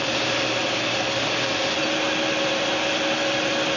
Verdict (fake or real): real